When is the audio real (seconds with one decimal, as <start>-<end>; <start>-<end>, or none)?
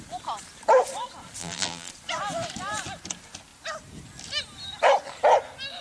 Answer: 0.0-1.4; 1.9-5.8